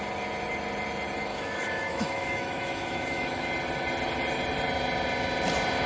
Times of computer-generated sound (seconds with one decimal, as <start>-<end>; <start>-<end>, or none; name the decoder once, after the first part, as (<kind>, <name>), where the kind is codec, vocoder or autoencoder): 1.3-3.5 (autoencoder, DAC-VAE)